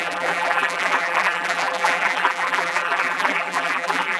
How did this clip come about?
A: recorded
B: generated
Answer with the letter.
B